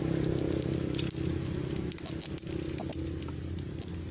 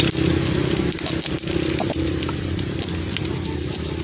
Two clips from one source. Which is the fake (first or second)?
second